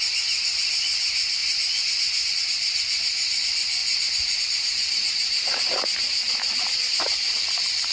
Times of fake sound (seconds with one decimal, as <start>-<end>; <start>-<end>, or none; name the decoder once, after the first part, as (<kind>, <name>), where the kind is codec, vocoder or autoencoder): none